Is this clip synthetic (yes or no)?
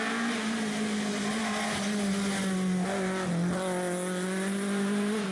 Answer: no